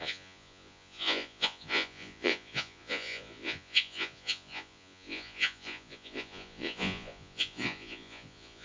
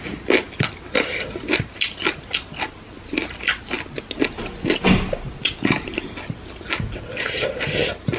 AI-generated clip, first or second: first